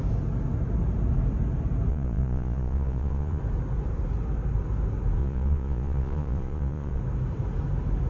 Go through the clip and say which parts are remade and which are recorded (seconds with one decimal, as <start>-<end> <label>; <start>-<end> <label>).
0.0-1.9 recorded; 1.9-3.4 remade; 3.4-5.2 recorded; 5.2-7.0 remade; 7.0-8.1 recorded